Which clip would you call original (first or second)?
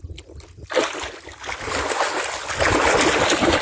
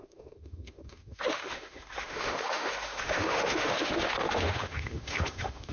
first